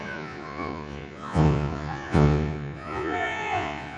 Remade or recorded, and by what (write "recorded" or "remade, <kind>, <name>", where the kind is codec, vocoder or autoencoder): remade, vocoder, Vocos